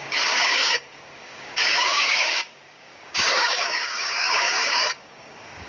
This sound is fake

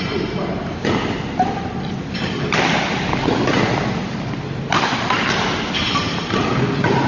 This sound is real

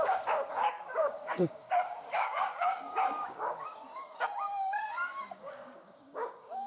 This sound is fake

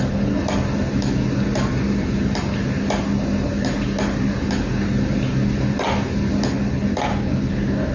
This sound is real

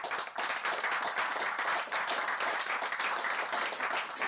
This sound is real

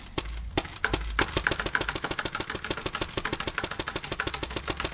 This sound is real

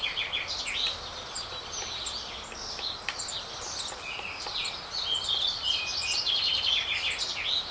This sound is real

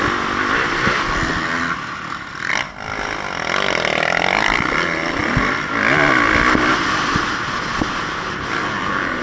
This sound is real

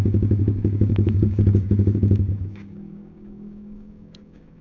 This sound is fake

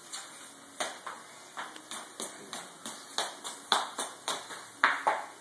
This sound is real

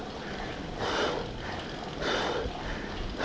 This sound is real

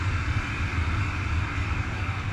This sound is fake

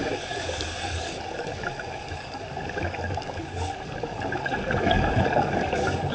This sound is fake